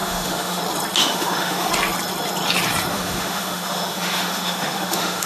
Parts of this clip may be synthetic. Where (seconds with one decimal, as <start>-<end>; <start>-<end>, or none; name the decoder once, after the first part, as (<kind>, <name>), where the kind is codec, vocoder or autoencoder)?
0.0-0.6 (autoencoder, DAC-VAE); 1.0-1.7; 2.9-5.3